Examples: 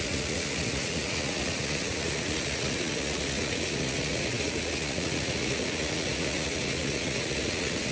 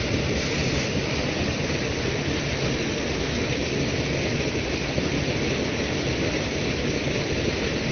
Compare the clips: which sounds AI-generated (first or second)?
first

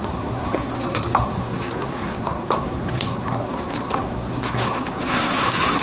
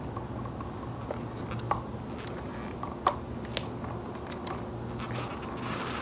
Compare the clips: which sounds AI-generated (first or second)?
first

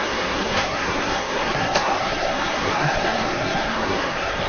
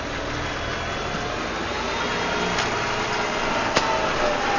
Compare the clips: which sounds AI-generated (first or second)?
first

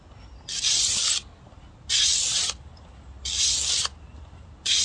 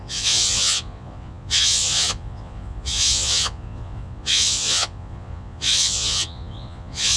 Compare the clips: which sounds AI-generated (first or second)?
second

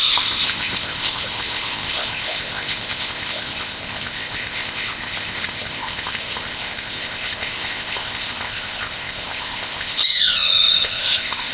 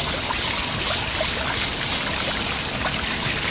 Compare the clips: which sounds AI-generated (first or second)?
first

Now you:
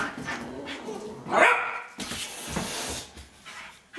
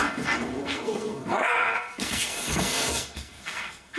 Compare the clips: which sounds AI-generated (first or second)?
second